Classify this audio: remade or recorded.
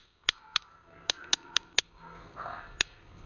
remade